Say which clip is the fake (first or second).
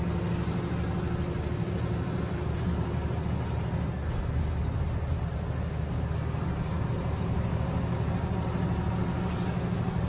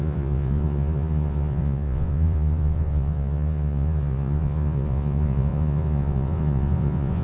second